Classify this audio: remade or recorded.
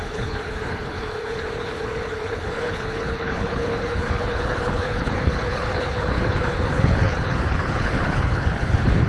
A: remade